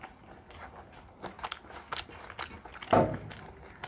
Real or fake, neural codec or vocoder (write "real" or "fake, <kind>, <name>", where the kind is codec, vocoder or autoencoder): real